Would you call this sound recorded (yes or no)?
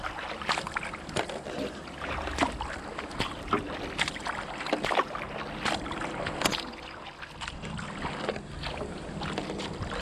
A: yes